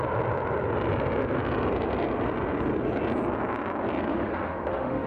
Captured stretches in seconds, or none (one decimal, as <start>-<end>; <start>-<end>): 0.0-4.1